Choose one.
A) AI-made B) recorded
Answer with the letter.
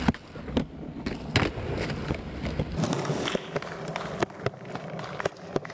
B